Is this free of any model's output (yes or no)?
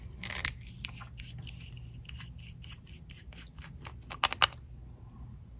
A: yes